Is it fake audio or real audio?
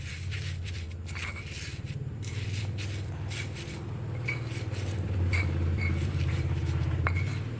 fake